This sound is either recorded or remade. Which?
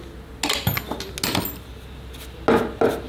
recorded